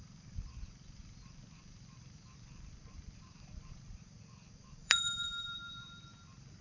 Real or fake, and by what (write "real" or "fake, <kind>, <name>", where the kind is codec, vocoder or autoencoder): fake, vocoder, BigVGAN v2